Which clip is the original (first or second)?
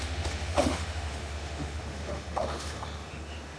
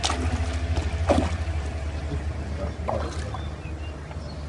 second